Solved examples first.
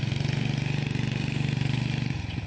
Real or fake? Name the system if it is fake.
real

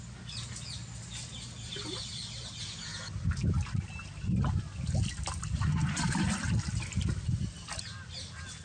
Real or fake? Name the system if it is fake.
real